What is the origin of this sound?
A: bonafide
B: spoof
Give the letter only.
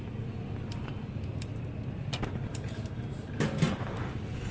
B